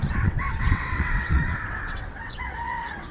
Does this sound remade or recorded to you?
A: remade